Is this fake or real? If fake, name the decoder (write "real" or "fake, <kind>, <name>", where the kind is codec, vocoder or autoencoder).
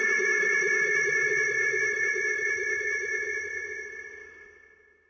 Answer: real